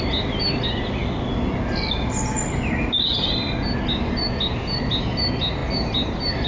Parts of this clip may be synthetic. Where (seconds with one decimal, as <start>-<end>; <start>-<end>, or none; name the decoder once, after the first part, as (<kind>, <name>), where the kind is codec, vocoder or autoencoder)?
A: none